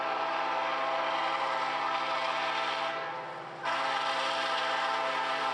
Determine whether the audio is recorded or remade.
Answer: recorded